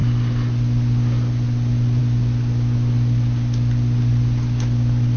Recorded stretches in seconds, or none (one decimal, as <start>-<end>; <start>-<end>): 0.0-5.2